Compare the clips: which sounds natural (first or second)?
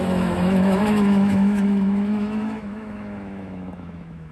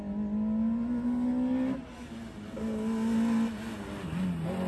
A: second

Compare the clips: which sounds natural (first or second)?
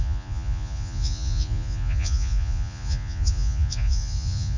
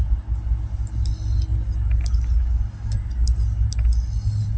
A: second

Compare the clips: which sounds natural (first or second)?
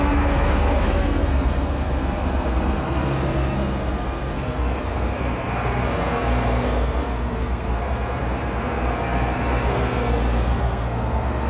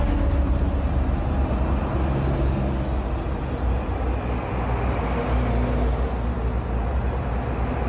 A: second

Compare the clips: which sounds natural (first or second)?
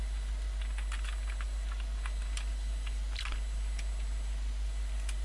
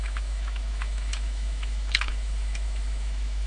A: first